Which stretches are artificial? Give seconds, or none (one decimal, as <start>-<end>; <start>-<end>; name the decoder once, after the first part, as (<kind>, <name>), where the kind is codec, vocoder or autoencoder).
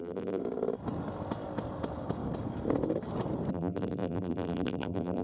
0.0-0.4 (vocoder, BigVGAN v2); 3.5-5.2